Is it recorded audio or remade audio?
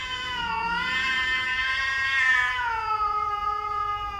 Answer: remade